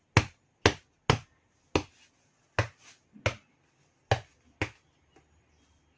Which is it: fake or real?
real